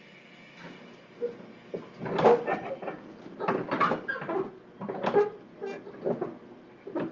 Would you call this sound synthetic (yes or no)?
no